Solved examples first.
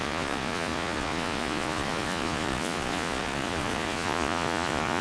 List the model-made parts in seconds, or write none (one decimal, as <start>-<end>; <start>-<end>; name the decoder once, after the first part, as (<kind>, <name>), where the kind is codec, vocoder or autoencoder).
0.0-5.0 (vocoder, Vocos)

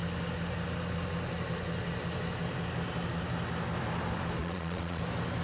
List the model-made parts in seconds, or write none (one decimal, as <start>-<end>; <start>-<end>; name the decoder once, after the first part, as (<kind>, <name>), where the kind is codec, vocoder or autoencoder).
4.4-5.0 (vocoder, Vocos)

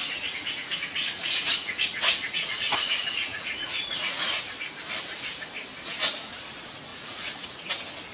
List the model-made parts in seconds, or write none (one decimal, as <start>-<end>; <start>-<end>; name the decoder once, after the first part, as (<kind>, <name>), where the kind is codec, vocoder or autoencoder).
0.0-4.4 (vocoder, Vocos); 6.9-7.6

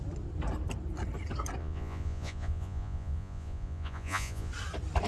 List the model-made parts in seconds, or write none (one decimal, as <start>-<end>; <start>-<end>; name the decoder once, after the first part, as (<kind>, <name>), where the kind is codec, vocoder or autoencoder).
1.6-4.5 (vocoder, Vocos)

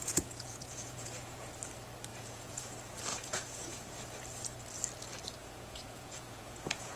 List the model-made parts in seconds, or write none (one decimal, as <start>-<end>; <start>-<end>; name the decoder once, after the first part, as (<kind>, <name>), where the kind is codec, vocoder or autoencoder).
0.0-1.5 (vocoder, Vocos); 2.1-2.6; 3.1-3.9; 5.4-7.0